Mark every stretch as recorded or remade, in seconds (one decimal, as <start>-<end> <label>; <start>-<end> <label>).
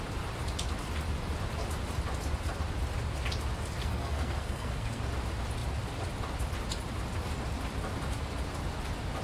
0.0-3.8 recorded; 3.8-5.0 remade; 5.0-9.2 recorded